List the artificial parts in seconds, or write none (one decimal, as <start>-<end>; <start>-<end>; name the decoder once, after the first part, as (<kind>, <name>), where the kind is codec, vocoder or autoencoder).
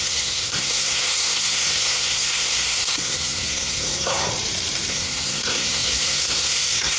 0.0-4.3 (codec, SNAC); 4.9-7.0